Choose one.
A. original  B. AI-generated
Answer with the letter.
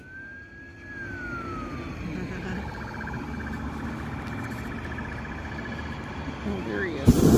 A